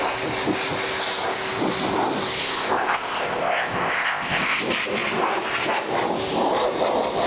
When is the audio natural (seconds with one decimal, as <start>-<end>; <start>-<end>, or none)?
0.0-2.4; 4.6-7.3